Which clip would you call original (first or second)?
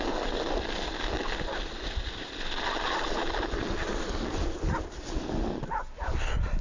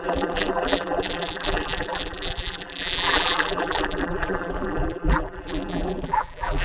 first